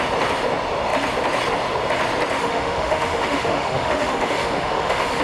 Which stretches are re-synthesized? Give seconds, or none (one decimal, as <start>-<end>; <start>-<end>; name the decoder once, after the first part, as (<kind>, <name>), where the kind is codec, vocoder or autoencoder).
2.4-5.2 (autoencoder, DAC-VAE)